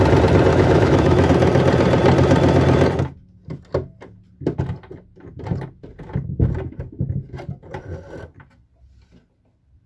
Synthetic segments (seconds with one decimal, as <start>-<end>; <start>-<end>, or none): 0.5-1.3

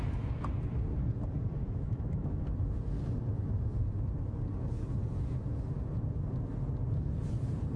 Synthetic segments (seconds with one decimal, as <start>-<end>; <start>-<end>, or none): 1.6-2.4

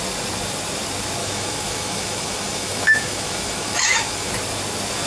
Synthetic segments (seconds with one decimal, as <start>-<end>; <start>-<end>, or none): 1.2-4.3

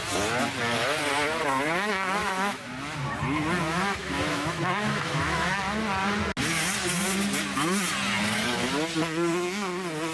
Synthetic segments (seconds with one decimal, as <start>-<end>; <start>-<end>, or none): 2.2-2.7; 4.0-5.6